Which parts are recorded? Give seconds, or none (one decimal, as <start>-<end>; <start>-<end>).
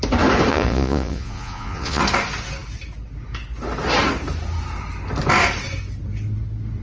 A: 0.0-0.5; 2.0-6.8